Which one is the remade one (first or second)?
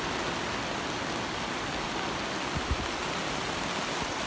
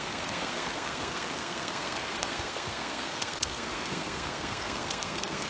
second